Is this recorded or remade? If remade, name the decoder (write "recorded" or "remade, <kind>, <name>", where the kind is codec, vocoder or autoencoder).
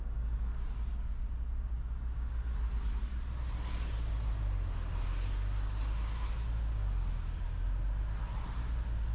recorded